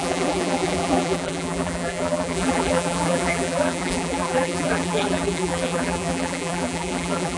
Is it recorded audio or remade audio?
remade